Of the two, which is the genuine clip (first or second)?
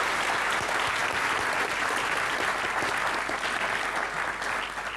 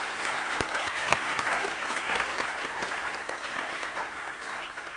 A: first